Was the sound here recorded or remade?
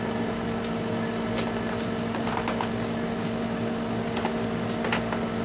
recorded